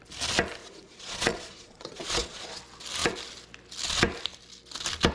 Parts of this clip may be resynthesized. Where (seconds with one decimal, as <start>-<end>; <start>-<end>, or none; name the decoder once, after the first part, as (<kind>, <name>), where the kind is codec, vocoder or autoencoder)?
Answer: 0.6-2.6 (vocoder, Vocos)

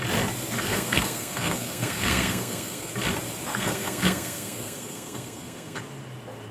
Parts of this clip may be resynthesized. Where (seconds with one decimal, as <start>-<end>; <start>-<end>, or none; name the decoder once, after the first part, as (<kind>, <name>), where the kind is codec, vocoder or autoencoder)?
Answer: 0.6-2.9 (codec, SNAC); 3.5-5.8